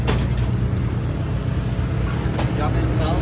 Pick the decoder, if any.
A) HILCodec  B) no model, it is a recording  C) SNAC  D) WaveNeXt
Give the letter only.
B